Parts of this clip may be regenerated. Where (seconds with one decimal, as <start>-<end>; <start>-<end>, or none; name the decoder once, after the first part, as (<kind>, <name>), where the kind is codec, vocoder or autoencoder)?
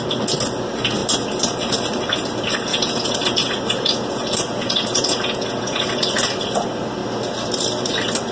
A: 2.7-6.1 (vocoder, Vocos)